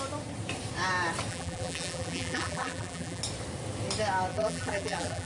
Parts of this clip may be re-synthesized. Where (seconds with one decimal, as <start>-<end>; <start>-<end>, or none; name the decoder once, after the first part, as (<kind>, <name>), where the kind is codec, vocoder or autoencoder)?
1.3-3.2 (vocoder, BigVGAN v2); 4.3-5.3